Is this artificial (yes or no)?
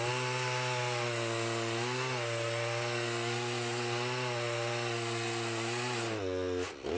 no